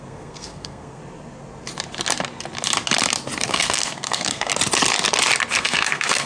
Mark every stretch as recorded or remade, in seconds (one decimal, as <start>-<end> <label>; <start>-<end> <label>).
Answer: 0.0-1.0 remade; 1.0-3.5 recorded; 3.5-4.5 remade; 4.5-5.5 recorded; 5.5-6.3 remade